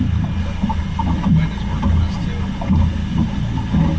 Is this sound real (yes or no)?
yes